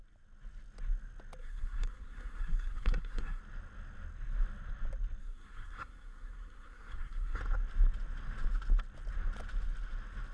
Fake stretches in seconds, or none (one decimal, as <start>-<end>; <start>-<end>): 1.4-3.4; 5.2-7.4